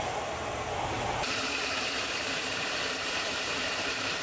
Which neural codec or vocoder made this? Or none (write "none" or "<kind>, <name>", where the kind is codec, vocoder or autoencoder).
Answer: vocoder, BigVGAN v2